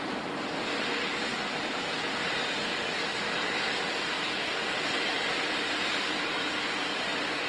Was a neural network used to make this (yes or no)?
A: no